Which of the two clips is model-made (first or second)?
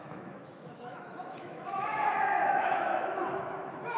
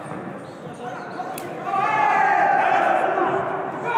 first